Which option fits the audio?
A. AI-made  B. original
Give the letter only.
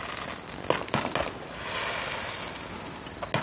B